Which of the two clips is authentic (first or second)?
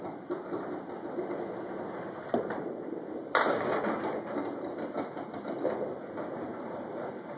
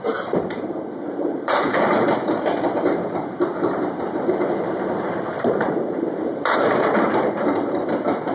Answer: first